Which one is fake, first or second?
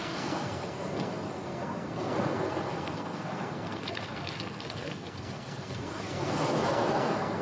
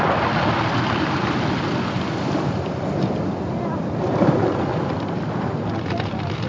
first